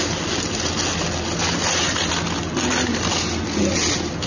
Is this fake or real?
real